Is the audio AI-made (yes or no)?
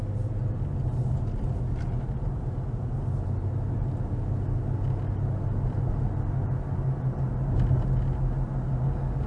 no